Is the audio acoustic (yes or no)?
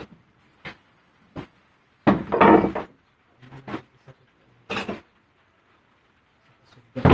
yes